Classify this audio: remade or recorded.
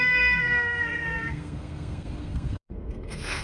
remade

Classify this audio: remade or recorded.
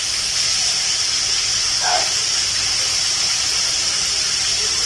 recorded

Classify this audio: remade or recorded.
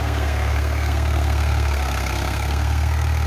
remade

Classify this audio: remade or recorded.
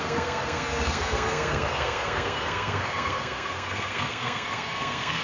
remade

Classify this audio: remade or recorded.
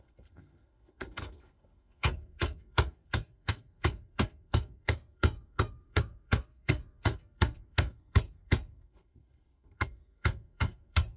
remade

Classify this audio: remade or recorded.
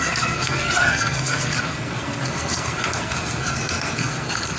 remade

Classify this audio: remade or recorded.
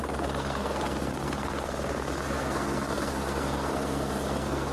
remade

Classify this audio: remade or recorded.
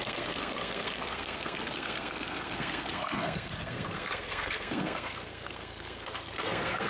remade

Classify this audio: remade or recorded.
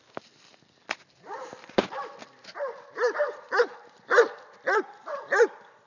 recorded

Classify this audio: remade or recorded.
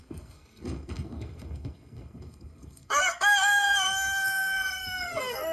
remade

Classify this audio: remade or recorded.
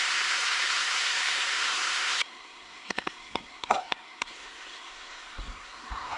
remade